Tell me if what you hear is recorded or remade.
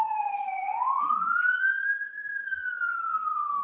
recorded